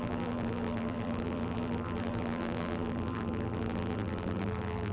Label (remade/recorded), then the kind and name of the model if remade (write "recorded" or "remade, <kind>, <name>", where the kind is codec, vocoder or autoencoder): remade, vocoder, BigVGAN v2